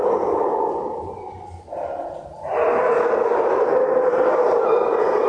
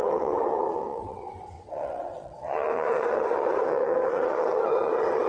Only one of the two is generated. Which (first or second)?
second